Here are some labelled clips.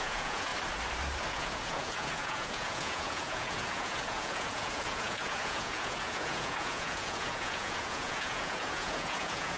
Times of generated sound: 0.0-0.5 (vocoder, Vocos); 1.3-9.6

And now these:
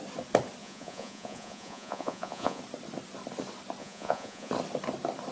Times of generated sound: 0.6-2.6 (vocoder, Vocos); 3.8-4.5

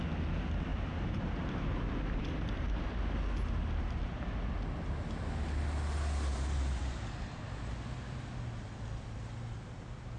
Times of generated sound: 0.7-2.9 (vocoder, BigVGAN v2); 6.3-6.8